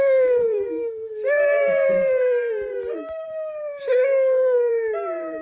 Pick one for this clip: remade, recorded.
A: remade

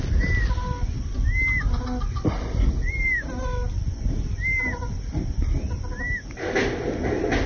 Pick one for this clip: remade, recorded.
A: recorded